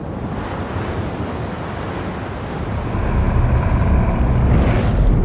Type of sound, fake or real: real